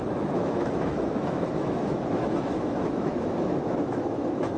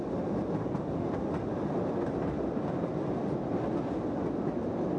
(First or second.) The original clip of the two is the second